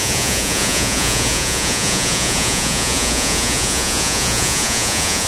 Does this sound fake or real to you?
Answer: fake